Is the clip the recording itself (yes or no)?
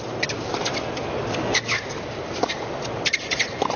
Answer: yes